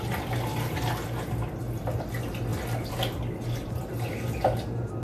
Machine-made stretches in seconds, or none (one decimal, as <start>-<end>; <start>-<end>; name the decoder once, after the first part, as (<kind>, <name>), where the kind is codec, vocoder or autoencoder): none